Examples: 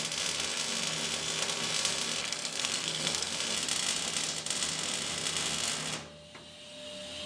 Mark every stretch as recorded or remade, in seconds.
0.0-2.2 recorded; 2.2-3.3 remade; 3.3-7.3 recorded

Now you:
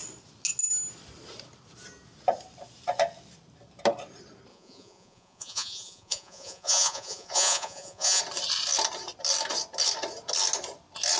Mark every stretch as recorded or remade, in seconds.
0.0-4.5 recorded; 4.5-8.2 remade; 8.2-11.2 recorded